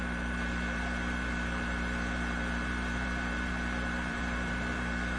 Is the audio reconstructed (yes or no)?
yes